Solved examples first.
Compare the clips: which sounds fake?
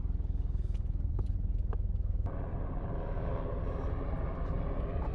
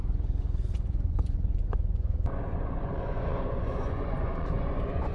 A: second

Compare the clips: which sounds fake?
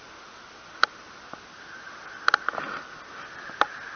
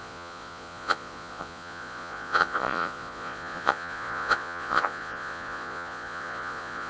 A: second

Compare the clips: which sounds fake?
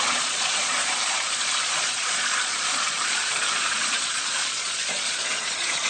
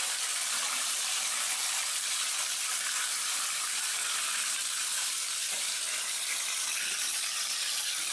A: first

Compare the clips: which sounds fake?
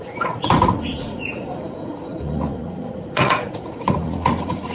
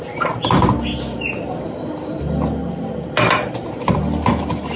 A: first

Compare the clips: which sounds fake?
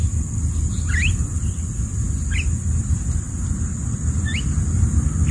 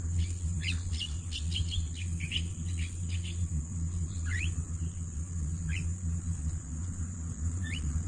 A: second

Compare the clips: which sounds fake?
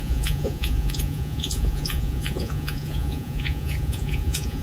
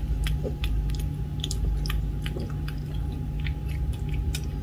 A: first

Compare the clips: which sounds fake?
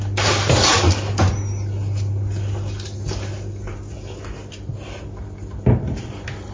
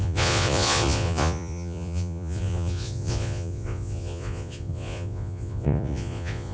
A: second